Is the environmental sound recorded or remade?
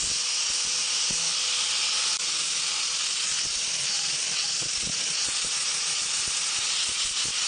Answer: recorded